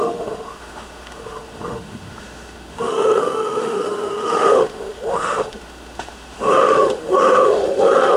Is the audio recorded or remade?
remade